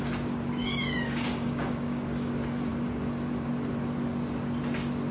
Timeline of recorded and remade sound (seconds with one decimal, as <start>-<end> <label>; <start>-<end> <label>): 0.0-0.6 recorded; 0.6-2.3 remade; 2.3-5.1 recorded